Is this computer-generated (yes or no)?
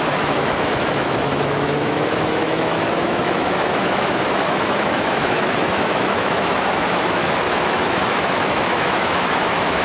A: yes